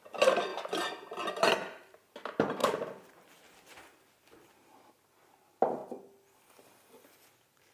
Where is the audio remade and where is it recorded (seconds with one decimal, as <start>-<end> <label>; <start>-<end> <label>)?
0.0-0.5 recorded; 0.5-1.3 remade; 1.3-2.6 recorded; 2.6-4.5 remade; 4.5-5.8 recorded; 5.8-6.5 remade; 6.5-7.7 recorded